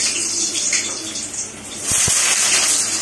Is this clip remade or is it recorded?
remade